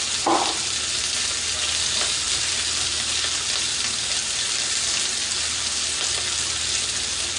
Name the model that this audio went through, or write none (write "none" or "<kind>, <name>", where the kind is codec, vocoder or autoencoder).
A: none